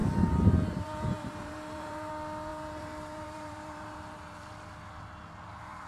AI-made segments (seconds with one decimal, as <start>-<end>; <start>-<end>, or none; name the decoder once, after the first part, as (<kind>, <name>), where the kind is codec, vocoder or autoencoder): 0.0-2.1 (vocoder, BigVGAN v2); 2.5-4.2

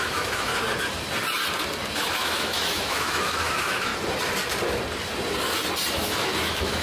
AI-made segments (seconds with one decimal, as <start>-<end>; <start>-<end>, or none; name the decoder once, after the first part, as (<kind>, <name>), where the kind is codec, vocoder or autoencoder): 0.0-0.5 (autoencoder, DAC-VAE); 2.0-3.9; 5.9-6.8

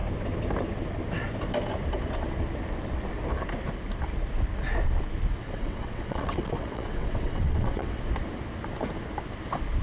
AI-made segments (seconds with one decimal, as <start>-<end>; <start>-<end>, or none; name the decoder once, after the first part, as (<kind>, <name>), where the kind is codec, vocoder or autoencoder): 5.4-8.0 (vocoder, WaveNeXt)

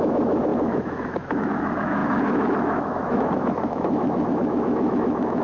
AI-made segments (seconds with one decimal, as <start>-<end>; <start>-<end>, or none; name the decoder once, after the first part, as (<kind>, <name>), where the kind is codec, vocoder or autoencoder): 0.0-5.4 (autoencoder, DAC-VAE)

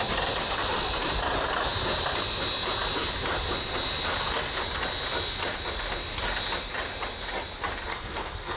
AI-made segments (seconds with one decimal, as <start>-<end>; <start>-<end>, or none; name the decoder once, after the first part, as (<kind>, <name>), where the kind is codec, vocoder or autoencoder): 7.9-8.6 (codec, SNAC)

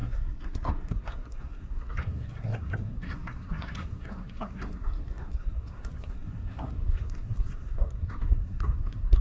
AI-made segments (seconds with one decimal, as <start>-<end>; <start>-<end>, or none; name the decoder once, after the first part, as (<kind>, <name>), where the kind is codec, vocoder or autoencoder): 0.0-9.2 (codec, SNAC)

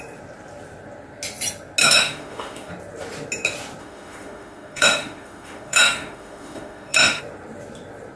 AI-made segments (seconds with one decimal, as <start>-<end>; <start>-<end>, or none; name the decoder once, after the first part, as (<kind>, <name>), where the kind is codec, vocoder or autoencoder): 1.8-2.7 (autoencoder, DAC-VAE); 3.8-7.2